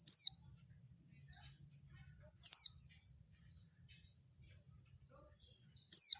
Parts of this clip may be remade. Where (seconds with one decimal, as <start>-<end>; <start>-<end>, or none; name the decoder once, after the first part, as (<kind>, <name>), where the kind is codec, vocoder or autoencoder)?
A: none